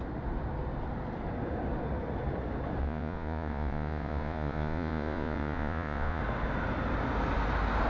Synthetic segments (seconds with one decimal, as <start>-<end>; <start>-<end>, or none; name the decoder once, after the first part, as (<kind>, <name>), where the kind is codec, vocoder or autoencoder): 2.8-6.2 (vocoder, Vocos)